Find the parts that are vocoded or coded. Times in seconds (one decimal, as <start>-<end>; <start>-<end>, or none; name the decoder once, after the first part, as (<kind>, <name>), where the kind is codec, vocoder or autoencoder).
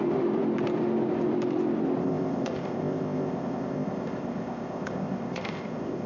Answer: 2.0-6.1 (codec, ZipCodec)